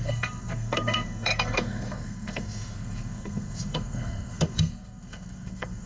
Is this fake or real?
fake